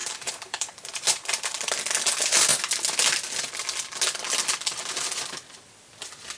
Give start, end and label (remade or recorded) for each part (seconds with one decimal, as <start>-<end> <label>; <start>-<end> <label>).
0.0-1.7 remade; 1.7-6.4 recorded